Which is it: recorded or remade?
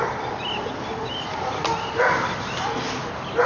recorded